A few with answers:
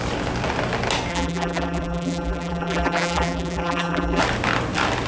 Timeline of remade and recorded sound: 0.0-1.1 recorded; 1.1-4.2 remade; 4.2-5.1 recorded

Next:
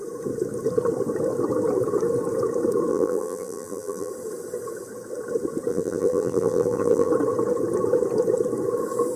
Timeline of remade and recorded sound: 0.0-2.9 recorded; 2.9-4.1 remade; 4.1-5.7 recorded; 5.7-7.1 remade; 7.1-9.2 recorded

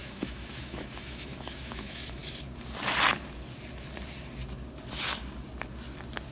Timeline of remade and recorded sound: 0.0-2.2 remade; 2.2-6.3 recorded

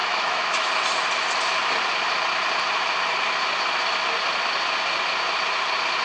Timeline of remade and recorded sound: 0.0-0.7 remade; 0.7-6.0 recorded

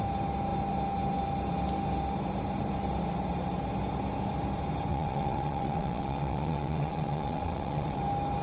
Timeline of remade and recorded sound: 0.0-4.9 recorded; 4.9-8.0 remade; 8.0-8.4 recorded

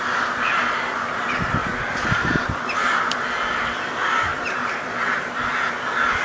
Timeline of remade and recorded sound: 0.0-1.6 recorded; 1.6-3.1 remade; 3.1-4.3 recorded; 4.3-5.6 remade; 5.6-6.2 recorded

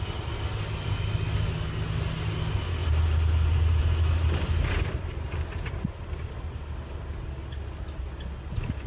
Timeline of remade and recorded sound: 0.0-8.9 recorded